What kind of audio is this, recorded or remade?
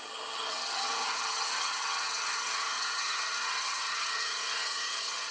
remade